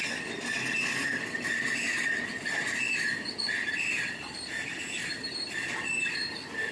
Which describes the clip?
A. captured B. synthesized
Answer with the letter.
A